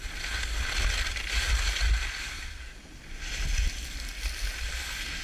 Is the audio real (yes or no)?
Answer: yes